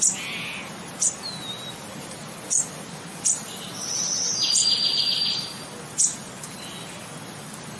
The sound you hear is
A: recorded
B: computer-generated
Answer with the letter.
A